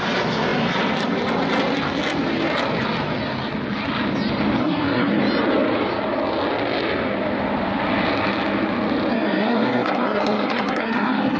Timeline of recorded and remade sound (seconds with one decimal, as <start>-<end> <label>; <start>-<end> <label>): 0.0-4.6 recorded; 4.6-5.2 remade; 5.2-9.1 recorded; 9.1-11.4 remade